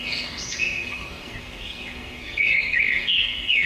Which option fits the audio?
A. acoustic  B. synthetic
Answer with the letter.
B